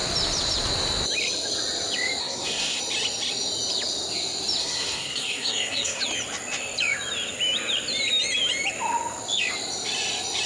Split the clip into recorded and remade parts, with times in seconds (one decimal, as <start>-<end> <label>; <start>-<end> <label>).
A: 0.0-2.2 recorded; 2.2-2.8 remade; 2.8-4.6 recorded; 4.6-6.0 remade; 6.0-10.5 recorded